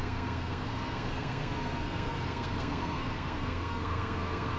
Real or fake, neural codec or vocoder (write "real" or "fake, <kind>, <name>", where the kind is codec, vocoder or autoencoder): fake, codec, SNAC